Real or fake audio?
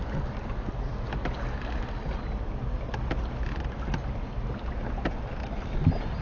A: real